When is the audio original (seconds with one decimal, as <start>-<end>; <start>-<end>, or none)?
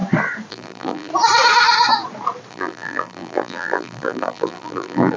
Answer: 0.0-0.5; 1.1-2.5